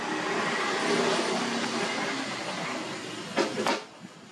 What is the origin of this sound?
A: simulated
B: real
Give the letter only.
B